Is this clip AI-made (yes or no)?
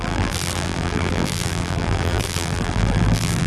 yes